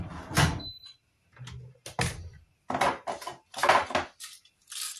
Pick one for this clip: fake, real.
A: real